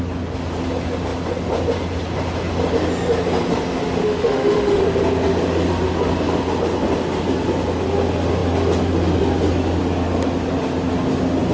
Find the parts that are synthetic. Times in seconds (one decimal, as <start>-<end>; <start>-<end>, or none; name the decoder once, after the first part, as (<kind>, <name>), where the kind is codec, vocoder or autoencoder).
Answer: 4.0-4.8 (autoencoder, DAC-VAE)